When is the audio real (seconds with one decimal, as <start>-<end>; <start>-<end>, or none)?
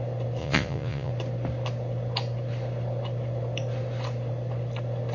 0.0-0.4; 1.1-5.1